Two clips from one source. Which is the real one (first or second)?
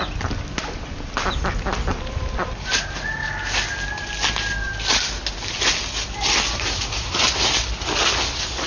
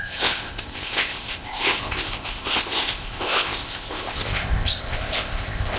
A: first